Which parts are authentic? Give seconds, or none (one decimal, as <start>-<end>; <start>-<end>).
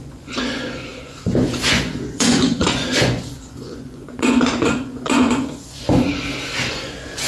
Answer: 6.1-6.7